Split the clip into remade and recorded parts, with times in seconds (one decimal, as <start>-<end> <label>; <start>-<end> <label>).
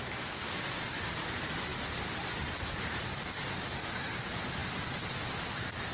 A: 0.0-1.2 recorded; 1.2-1.7 remade; 1.7-2.4 recorded; 2.4-3.1 remade; 3.1-3.7 recorded; 3.7-5.9 remade